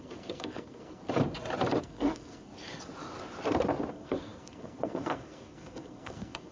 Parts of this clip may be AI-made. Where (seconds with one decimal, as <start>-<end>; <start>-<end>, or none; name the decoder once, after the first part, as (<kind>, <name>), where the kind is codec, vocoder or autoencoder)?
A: 0.0-1.0 (codec, SNAC); 1.8-2.5; 3.9-6.5